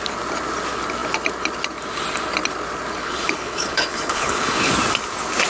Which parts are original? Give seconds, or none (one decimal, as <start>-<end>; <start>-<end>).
0.0-3.0; 4.7-5.5